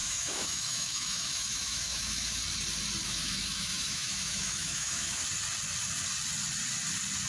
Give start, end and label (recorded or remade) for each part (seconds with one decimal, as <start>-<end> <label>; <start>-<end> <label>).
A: 0.0-2.4 remade; 2.4-3.0 recorded; 3.0-5.2 remade; 5.2-7.3 recorded